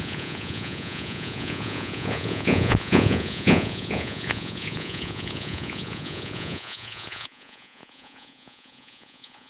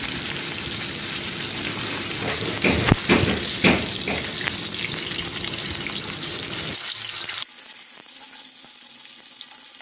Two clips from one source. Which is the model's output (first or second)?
first